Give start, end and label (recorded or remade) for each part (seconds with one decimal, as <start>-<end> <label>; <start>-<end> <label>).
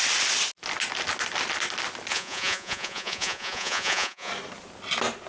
0.0-2.1 recorded; 2.1-4.3 remade; 4.3-5.3 recorded